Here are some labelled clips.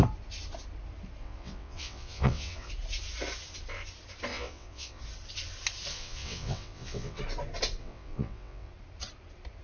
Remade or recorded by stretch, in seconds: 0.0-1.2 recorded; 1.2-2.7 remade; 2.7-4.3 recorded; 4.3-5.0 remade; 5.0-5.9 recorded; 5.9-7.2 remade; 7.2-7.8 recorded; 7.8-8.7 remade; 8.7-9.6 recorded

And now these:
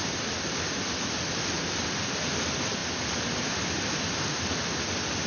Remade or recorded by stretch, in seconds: 0.0-5.3 recorded

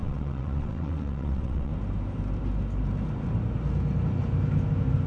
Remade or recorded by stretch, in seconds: 0.0-1.7 remade; 1.7-5.1 recorded

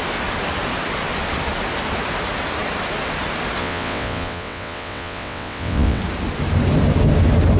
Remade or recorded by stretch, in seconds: 0.0-3.6 recorded; 3.6-6.0 remade; 6.0-7.6 recorded

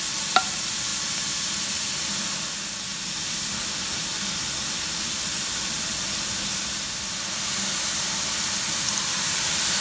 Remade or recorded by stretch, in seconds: 0.0-9.8 recorded